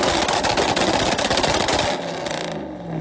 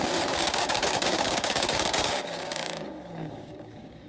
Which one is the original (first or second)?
first